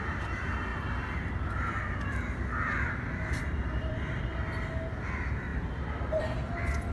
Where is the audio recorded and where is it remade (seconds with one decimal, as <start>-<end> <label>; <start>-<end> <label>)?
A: 0.0-0.7 recorded; 0.7-4.2 remade; 4.2-5.5 recorded; 5.5-6.2 remade; 6.2-6.9 recorded

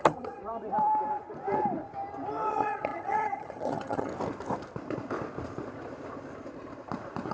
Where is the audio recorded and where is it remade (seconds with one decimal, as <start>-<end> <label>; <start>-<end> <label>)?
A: 0.0-0.4 remade; 0.4-2.5 recorded; 2.5-4.1 remade; 4.1-7.3 recorded

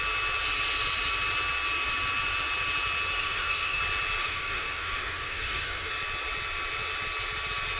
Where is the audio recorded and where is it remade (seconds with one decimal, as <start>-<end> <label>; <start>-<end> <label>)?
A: 0.0-3.2 recorded; 3.2-3.8 remade; 3.8-4.2 recorded; 4.2-5.9 remade; 5.9-7.8 recorded

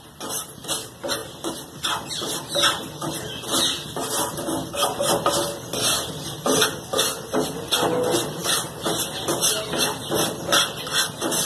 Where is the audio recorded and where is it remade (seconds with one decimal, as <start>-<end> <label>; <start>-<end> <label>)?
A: 0.0-8.4 recorded; 8.4-9.3 remade; 9.3-11.5 recorded

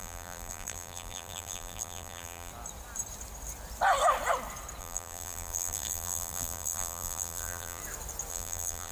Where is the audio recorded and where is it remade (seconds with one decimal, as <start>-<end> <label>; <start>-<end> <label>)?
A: 0.0-2.5 remade; 2.5-4.8 recorded; 4.8-7.8 remade; 7.8-8.3 recorded; 8.3-8.9 remade

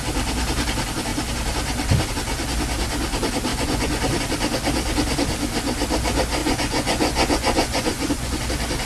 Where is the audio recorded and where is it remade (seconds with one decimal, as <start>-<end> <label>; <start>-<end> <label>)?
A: 0.0-3.5 recorded; 3.5-4.0 remade; 4.0-6.4 recorded; 6.4-8.4 remade; 8.4-8.9 recorded

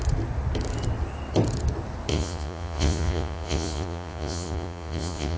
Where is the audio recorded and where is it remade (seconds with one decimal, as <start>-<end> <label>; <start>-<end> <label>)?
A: 0.0-2.1 recorded; 2.1-5.4 remade